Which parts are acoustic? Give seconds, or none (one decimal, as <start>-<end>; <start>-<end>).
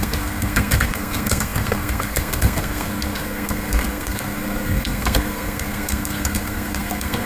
none